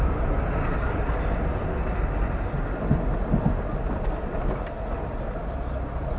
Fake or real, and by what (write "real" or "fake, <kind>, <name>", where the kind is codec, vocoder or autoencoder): real